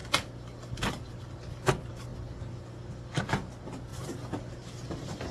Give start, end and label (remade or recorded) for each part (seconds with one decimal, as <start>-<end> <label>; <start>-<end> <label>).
0.0-5.3 recorded